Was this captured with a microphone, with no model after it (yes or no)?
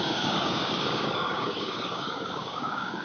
no